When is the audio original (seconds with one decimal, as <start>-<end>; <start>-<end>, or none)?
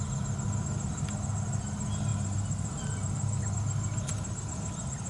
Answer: 0.0-2.1; 3.5-5.1